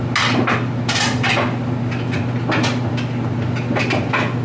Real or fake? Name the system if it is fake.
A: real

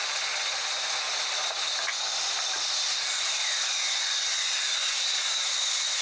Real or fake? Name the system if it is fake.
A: real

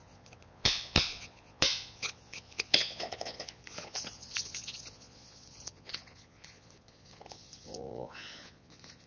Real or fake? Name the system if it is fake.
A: fake, vocoder, Vocos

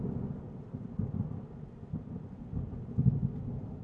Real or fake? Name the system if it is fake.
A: real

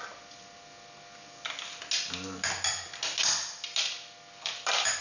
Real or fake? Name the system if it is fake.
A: real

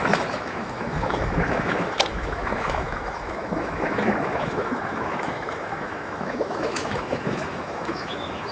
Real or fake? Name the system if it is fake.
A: fake, autoencoder, DAC-VAE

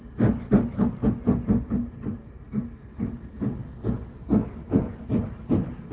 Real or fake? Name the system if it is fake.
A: real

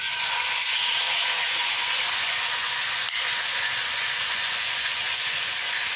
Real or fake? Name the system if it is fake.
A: fake, vocoder, Vocos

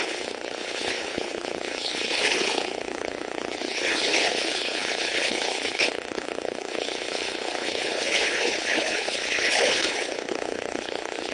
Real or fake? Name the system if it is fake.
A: fake, codec, HILCodec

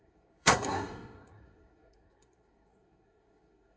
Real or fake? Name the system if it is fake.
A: fake, codec, SNAC